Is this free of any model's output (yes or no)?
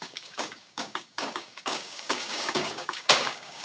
no